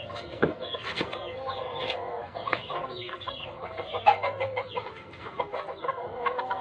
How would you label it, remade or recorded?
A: remade